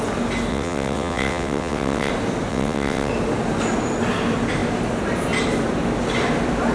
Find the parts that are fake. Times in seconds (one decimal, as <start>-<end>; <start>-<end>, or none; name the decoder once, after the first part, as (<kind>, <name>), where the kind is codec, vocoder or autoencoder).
0.5-2.1 (vocoder, WaveNeXt); 2.5-3.1